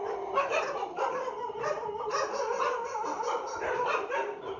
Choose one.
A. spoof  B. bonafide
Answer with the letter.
A